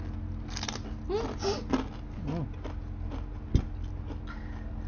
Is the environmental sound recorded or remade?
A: recorded